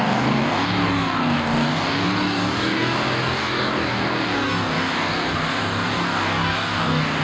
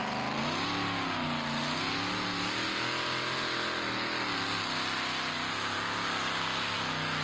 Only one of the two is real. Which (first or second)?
second